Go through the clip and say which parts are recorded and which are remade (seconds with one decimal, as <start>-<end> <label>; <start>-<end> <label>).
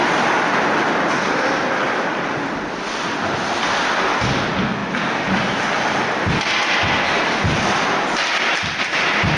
0.0-9.4 recorded